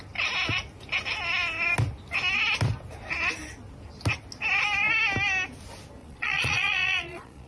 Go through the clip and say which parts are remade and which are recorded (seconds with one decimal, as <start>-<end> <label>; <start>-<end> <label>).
0.0-6.0 recorded; 6.0-7.5 remade